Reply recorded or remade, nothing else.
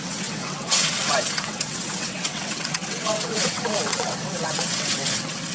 remade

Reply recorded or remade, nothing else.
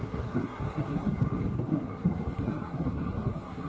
remade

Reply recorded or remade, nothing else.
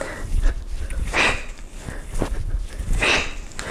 recorded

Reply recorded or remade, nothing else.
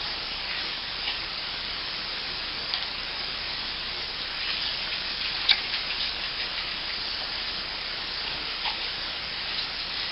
remade